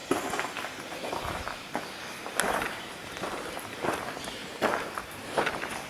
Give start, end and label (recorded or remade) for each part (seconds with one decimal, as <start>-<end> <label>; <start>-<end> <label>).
0.0-5.9 recorded

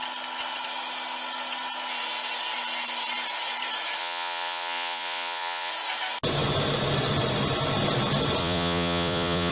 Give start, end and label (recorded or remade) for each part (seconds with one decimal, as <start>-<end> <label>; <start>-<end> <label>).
0.0-4.0 recorded; 4.0-5.7 remade; 5.7-8.4 recorded; 8.4-9.5 remade

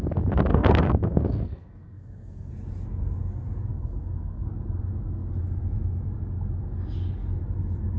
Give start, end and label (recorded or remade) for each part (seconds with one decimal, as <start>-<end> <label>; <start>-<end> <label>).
0.0-0.5 recorded; 0.5-2.5 remade; 2.5-3.7 recorded; 3.7-4.5 remade; 4.5-8.0 recorded

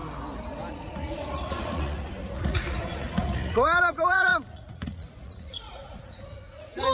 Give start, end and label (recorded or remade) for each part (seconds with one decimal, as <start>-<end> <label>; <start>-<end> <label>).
0.0-0.7 recorded; 0.7-6.9 remade